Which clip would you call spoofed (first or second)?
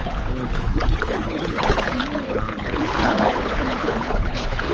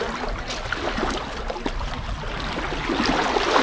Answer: first